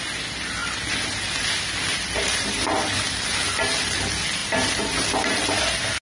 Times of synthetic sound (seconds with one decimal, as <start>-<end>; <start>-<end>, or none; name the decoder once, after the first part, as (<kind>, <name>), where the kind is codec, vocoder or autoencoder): none